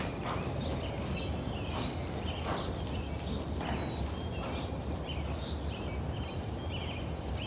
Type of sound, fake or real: real